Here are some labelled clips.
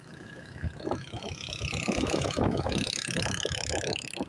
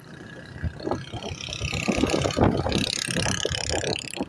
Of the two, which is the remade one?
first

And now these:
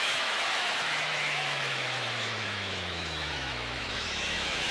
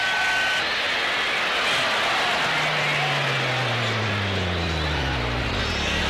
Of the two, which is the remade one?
first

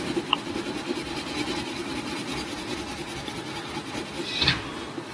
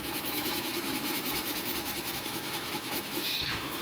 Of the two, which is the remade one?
second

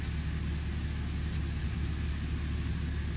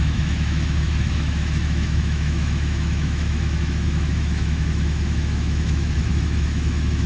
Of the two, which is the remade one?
second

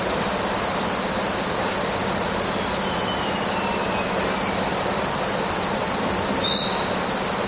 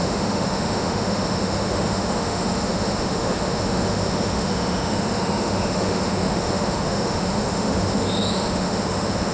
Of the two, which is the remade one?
second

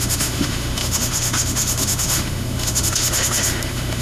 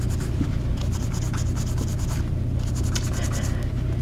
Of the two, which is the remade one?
first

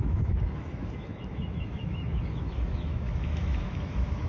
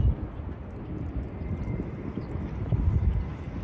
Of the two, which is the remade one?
first